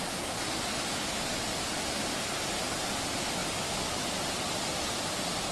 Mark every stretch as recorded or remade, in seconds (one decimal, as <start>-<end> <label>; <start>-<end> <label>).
0.0-5.5 recorded